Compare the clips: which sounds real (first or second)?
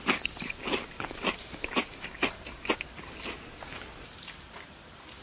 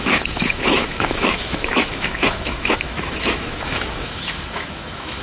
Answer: first